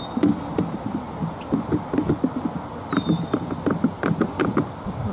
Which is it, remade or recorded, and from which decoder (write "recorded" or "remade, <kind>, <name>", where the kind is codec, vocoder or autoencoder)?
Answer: recorded